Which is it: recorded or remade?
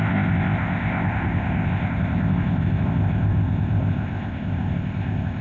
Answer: remade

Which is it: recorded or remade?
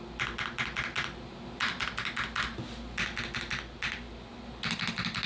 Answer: recorded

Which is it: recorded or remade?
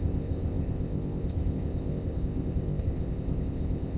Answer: remade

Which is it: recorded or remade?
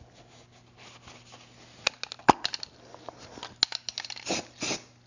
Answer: recorded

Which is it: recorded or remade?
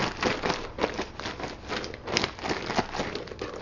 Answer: recorded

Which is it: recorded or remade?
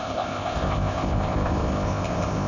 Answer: remade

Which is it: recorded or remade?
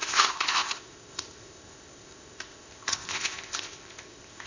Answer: remade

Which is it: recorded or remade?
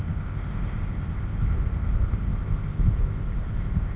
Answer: remade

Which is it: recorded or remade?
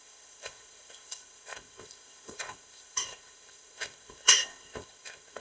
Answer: remade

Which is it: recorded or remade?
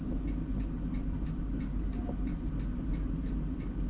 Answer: recorded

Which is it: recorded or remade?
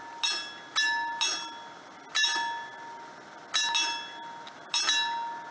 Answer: recorded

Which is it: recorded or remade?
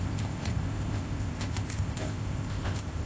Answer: remade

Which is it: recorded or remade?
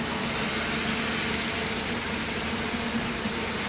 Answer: recorded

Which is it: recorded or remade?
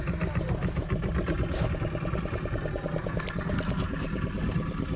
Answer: recorded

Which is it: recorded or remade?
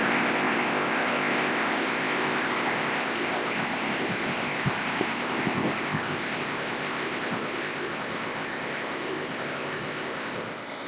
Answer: remade